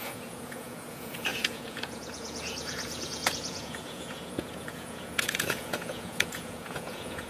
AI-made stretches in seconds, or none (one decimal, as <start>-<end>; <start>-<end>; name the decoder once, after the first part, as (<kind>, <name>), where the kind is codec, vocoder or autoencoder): 0.0-7.3 (vocoder, Vocos)